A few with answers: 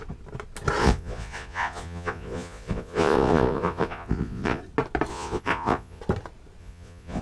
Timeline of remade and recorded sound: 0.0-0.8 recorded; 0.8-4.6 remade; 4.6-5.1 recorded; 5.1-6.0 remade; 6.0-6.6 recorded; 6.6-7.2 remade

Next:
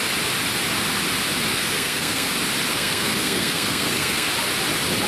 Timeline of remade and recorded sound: 0.0-1.5 recorded; 1.5-2.3 remade; 2.3-2.7 recorded; 2.7-4.3 remade; 4.3-5.1 recorded